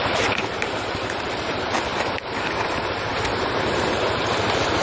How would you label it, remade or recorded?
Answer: remade